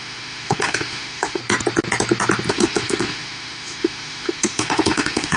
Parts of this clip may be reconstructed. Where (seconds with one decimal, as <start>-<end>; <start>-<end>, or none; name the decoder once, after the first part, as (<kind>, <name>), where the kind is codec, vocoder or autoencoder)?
0.0-1.4 (autoencoder, DAC-VAE); 2.5-5.4